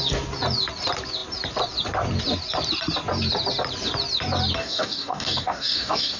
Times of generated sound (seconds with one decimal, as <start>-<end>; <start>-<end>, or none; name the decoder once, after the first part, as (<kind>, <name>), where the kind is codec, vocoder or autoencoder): 4.6-6.2 (codec, DAC)